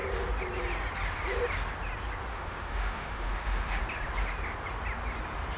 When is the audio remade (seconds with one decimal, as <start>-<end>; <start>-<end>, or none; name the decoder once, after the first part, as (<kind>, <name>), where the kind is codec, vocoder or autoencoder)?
2.3-3.8 (autoencoder, DAC-VAE)